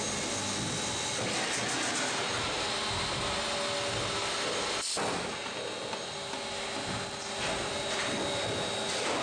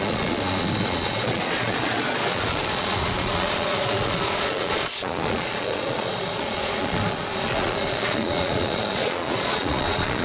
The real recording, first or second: first